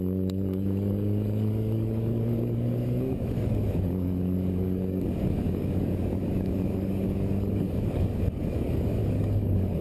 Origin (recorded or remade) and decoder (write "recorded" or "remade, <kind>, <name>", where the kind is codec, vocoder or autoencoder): remade, codec, DAC